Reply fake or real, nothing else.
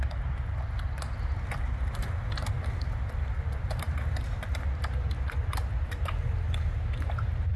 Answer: real